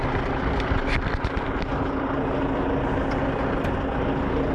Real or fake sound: real